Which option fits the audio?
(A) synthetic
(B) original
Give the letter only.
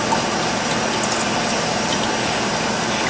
B